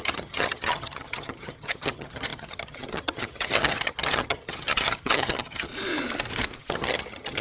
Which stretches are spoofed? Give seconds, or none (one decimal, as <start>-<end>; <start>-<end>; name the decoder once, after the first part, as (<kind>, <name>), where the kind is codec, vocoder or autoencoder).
0.0-5.7 (vocoder, HiFi-GAN); 6.6-7.4